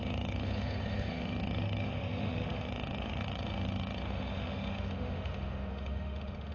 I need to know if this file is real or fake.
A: fake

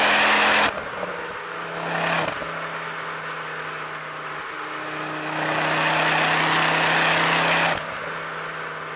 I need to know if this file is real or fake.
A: real